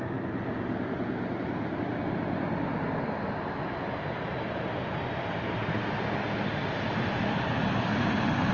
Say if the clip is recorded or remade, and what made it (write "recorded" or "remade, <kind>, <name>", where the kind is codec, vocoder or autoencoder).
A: recorded